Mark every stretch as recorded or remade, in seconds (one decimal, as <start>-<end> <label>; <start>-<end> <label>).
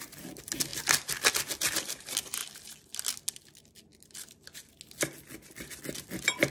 0.0-6.5 recorded